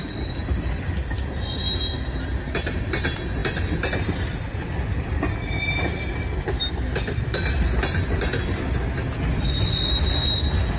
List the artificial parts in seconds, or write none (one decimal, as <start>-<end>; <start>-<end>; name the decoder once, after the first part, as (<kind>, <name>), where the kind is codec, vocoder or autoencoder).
none